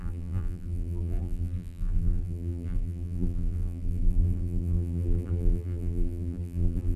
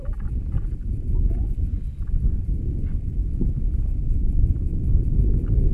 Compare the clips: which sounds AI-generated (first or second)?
first